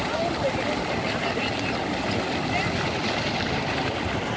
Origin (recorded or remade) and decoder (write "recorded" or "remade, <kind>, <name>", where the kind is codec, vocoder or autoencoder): recorded